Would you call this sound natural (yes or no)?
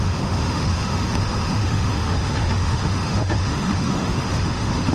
no